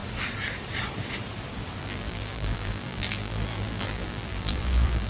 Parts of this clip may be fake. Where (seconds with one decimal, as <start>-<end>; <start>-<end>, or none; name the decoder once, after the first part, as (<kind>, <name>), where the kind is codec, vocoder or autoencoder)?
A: 1.8-5.1 (vocoder, BigVGAN v2)